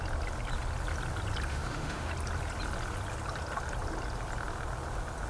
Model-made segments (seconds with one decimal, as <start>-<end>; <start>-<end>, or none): 1.5-2.1